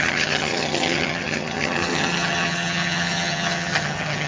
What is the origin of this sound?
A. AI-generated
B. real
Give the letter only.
A